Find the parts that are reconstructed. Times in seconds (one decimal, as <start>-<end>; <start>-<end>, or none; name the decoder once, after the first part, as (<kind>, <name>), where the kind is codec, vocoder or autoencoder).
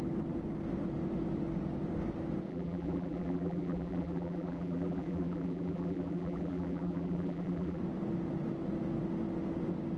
2.5-7.8 (vocoder, BigVGAN v2)